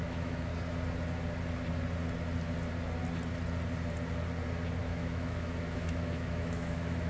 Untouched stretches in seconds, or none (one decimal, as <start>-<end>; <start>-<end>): 0.5-4.8